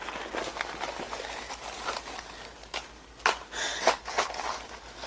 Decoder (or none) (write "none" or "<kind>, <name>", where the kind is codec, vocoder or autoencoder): none